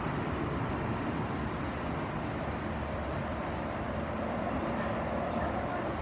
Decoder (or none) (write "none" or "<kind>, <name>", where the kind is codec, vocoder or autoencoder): none